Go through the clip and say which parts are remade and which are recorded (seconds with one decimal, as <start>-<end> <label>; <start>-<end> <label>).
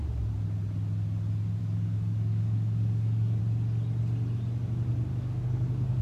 0.0-1.6 recorded; 1.6-3.4 remade; 3.4-5.1 recorded; 5.1-6.0 remade